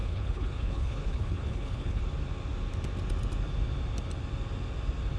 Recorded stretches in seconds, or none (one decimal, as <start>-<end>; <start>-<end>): 2.0-5.2